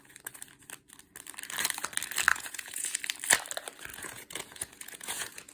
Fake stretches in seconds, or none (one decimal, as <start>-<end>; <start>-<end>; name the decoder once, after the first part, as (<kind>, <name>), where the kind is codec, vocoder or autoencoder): 2.3-3.0 (vocoder, Vocos); 3.9-5.5